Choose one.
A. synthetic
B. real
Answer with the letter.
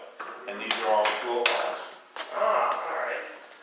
B